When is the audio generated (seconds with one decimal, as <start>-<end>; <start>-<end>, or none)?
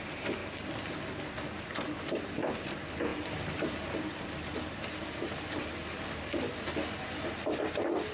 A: 0.0-0.4; 1.0-8.1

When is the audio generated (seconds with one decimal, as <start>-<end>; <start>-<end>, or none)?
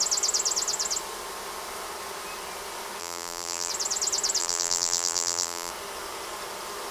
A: 3.0-3.7; 4.4-5.7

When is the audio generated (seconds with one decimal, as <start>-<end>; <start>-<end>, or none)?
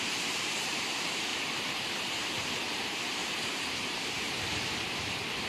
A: 0.0-5.5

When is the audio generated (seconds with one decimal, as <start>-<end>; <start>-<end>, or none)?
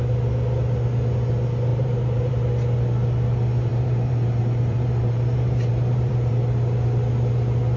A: 1.7-2.3; 3.7-6.3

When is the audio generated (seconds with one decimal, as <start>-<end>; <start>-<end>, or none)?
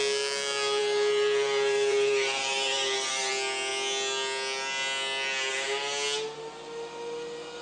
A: 0.8-3.3